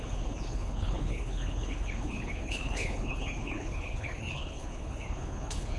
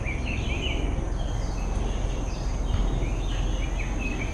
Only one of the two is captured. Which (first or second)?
second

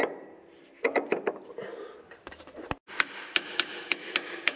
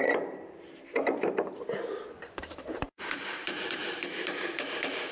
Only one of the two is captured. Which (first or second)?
first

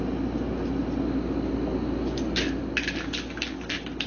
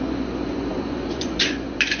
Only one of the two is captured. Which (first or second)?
first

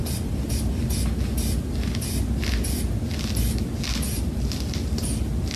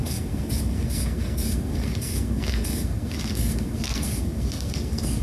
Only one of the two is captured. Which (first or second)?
first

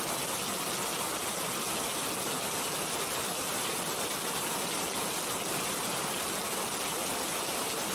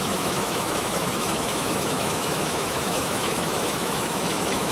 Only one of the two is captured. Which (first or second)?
first